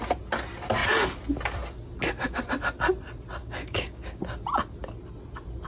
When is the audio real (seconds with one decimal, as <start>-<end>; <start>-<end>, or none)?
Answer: 0.0-3.4; 4.2-5.7